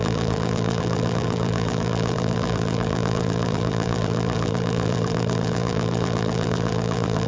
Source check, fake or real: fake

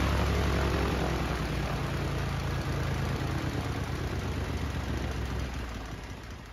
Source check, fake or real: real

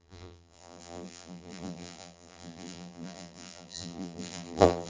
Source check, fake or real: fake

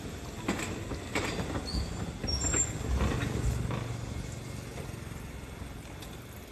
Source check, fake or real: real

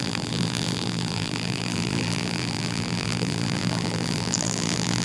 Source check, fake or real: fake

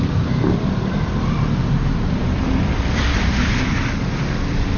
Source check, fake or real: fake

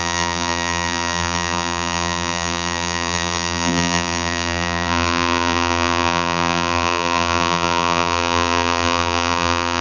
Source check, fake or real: fake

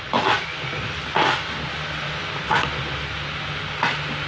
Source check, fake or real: real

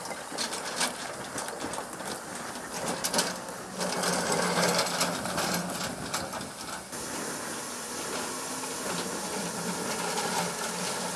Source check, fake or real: real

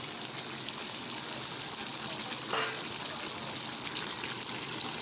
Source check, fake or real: real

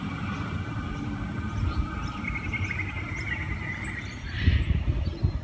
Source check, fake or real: fake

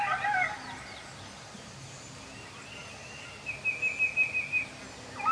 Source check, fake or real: real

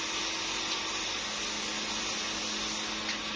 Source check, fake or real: real